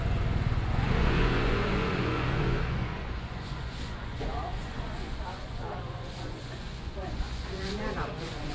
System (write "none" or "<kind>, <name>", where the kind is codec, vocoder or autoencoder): vocoder, Vocos